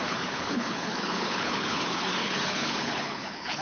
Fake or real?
fake